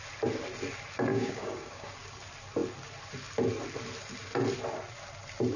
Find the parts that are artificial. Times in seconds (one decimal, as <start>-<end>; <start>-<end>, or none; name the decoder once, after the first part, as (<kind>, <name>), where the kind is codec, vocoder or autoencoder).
1.1-1.9 (codec, DAC)